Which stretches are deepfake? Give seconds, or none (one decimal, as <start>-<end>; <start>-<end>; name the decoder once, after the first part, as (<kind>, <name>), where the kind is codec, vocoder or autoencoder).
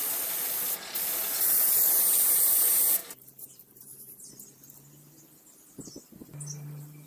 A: 3.0-4.3 (vocoder, BigVGAN v2)